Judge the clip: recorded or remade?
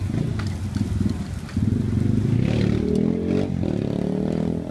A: recorded